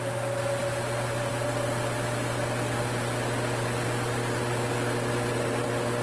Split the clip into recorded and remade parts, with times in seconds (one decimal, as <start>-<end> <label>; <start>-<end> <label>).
0.0-6.0 recorded